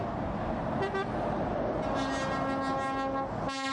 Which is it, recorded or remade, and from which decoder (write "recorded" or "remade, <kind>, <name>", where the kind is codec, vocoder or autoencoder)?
recorded